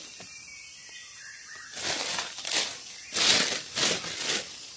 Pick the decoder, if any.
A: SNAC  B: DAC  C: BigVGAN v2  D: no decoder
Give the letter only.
D